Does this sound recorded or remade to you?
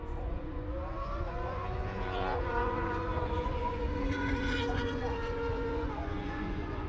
remade